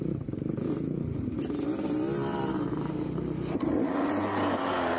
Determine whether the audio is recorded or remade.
remade